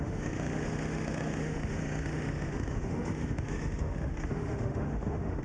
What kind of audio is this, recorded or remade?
remade